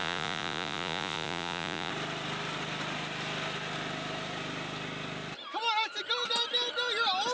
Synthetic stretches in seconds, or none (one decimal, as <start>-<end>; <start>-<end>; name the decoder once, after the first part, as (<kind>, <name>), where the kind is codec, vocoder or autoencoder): 0.0-1.9 (vocoder, Vocos)

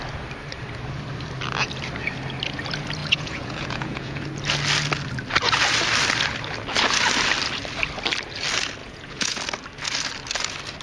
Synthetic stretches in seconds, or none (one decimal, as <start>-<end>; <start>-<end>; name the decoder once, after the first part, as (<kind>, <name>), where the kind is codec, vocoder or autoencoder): 3.0-4.2 (vocoder, Vocos); 8.8-9.4